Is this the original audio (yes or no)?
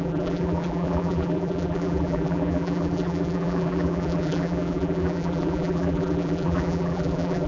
no